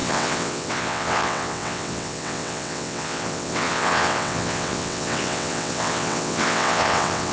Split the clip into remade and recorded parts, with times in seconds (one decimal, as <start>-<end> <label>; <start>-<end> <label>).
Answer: 0.0-7.3 remade

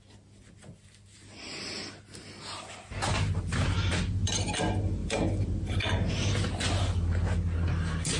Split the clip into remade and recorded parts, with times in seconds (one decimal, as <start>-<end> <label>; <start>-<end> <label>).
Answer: 0.0-5.0 recorded; 5.0-6.1 remade; 6.1-8.2 recorded

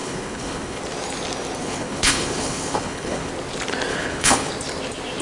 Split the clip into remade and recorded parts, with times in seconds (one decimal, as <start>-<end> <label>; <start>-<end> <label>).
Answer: 0.0-0.8 remade; 0.8-1.6 recorded; 1.6-3.3 remade; 3.3-3.9 recorded; 3.9-4.5 remade; 4.5-5.2 recorded

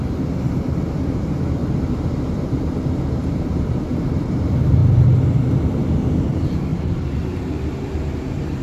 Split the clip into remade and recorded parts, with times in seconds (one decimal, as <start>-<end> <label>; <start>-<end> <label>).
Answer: 0.0-1.6 remade; 1.6-2.2 recorded; 2.2-4.8 remade; 4.8-6.2 recorded; 6.2-8.6 remade